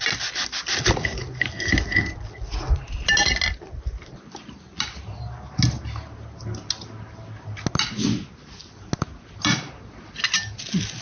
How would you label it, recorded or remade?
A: recorded